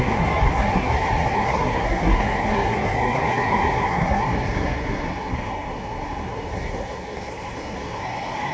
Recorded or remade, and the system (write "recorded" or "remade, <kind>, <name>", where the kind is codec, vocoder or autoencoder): remade, codec, SNAC